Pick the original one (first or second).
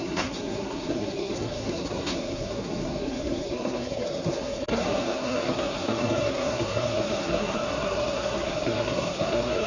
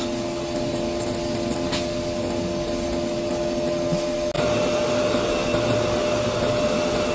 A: second